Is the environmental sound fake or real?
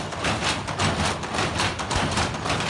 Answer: real